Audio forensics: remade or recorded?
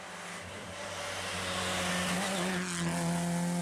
recorded